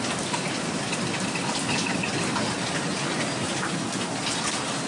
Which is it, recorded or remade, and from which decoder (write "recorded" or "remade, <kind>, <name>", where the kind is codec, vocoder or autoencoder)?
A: recorded